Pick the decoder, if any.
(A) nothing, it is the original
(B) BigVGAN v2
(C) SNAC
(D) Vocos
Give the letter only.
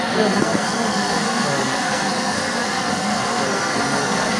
C